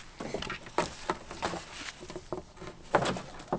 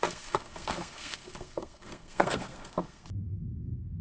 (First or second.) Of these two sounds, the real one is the first